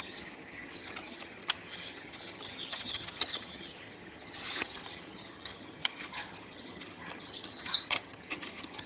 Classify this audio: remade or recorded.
remade